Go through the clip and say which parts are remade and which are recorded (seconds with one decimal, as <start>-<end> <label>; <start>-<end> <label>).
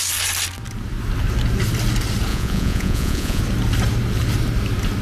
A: 0.0-2.3 recorded; 2.3-3.4 remade; 3.4-5.0 recorded